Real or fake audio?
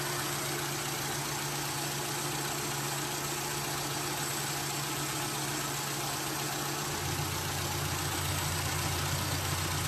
real